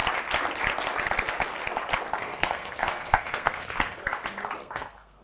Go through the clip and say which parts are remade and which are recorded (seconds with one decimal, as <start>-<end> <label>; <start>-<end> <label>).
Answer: 0.0-2.2 recorded; 2.2-4.0 remade; 4.0-4.6 recorded; 4.6-5.2 remade